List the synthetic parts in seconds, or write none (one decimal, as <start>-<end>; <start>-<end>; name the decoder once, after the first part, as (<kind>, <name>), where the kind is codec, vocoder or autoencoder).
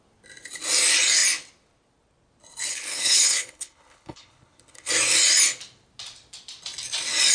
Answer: 2.7-4.9 (codec, HILCodec)